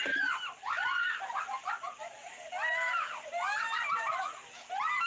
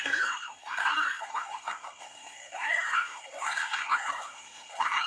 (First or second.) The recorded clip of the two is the first